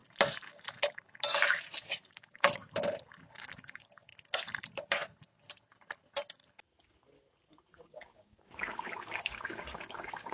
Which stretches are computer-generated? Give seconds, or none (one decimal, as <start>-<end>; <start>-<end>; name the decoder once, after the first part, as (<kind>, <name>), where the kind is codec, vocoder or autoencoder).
2.1-2.6 (codec, DAC); 3.3-4.1; 7.9-10.3